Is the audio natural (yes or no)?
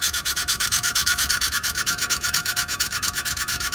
no